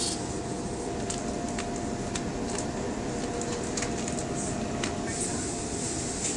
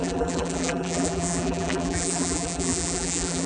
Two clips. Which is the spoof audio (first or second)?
second